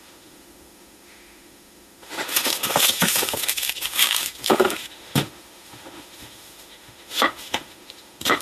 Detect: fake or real fake